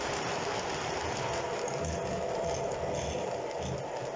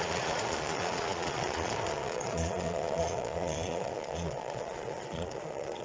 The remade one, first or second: second